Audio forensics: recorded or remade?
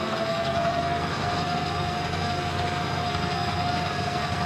remade